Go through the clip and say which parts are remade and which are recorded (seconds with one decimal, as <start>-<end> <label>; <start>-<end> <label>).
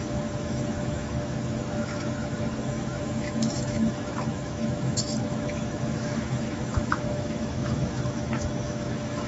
0.0-9.3 remade